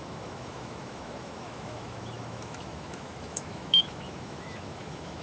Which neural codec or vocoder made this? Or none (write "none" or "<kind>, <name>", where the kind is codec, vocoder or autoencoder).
autoencoder, DAC-VAE